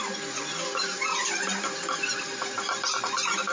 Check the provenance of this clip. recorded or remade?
remade